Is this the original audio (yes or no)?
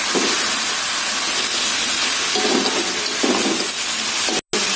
yes